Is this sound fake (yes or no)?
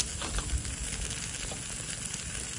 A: no